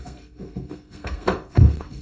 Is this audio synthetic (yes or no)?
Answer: yes